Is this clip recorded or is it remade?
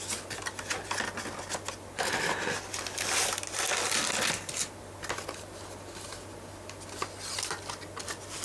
recorded